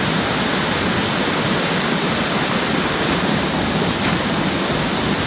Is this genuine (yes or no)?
yes